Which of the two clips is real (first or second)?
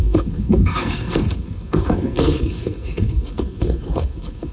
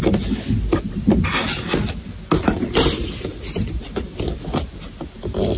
second